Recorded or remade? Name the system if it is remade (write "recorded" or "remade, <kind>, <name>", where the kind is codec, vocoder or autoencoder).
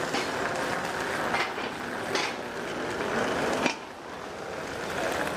recorded